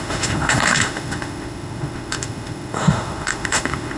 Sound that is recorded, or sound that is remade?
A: remade